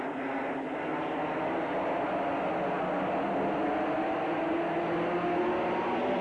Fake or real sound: real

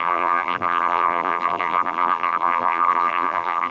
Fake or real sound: fake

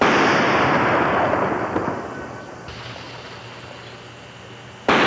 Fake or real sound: real